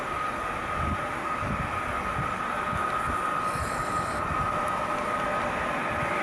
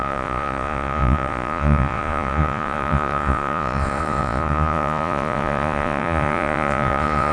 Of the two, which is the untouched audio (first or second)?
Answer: first